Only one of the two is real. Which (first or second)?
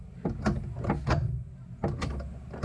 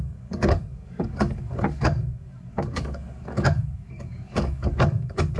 first